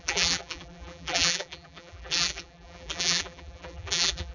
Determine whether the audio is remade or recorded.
remade